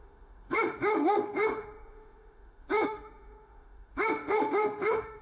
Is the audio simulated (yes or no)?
yes